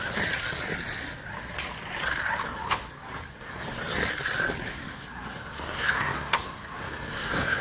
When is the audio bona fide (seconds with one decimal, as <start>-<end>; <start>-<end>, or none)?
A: 0.0-3.3; 3.8-4.7